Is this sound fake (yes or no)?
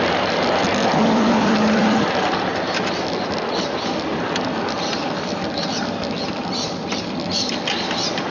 no